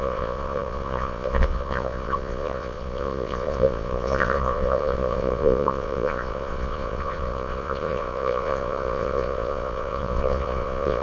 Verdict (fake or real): fake